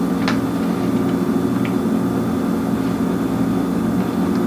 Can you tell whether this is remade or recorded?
recorded